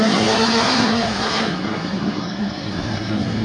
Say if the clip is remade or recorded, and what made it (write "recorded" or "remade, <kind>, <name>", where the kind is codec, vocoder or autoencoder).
remade, codec, SNAC